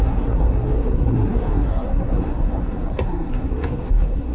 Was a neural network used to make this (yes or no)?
yes